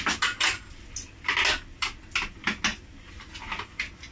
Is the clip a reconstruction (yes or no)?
no